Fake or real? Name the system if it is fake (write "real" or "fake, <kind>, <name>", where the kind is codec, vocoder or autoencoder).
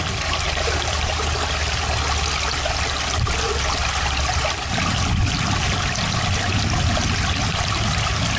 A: real